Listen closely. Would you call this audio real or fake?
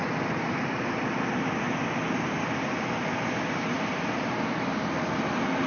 real